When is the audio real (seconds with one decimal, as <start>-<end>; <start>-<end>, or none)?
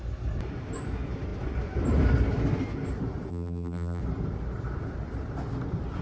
0.0-3.3; 4.0-6.0